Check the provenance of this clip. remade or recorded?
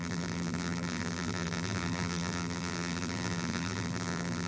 remade